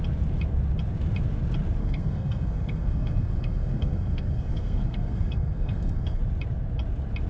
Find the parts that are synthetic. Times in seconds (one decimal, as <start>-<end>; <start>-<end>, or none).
1.8-6.2